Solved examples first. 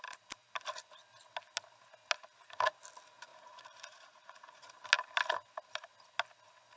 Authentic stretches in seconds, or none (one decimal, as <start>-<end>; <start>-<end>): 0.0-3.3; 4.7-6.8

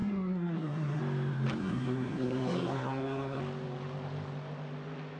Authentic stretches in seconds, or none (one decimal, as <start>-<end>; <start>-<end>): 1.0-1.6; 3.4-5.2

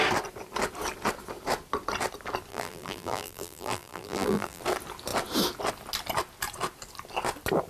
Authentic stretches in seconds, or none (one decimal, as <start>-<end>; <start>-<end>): 0.0-2.5; 4.6-7.7

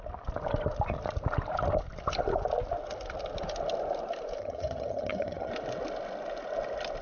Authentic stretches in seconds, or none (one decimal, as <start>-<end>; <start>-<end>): 0.0-4.4; 5.5-7.0

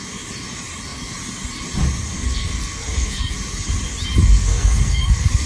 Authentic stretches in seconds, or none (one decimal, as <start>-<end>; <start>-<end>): 0.0-2.1; 3.3-4.2

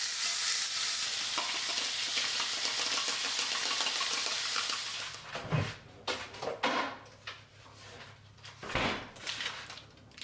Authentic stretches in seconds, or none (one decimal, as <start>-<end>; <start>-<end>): 0.0-10.2

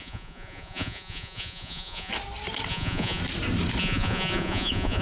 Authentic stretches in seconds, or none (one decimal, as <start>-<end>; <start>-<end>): 2.1-2.7; 3.2-3.8

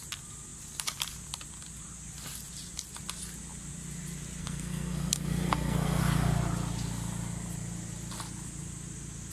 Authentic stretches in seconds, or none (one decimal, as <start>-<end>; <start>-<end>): 0.0-4.4; 6.0-9.3